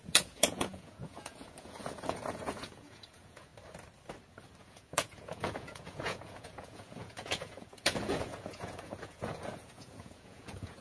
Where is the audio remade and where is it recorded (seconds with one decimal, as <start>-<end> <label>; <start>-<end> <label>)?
0.0-3.5 remade; 3.5-4.6 recorded; 4.6-10.8 remade